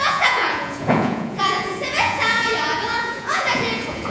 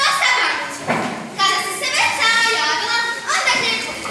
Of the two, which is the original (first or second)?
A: second